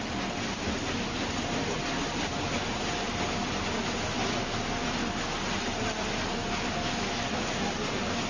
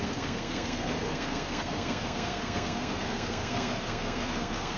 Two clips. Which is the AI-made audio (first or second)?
second